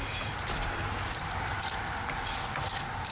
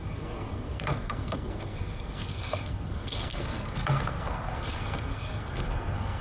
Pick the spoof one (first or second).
second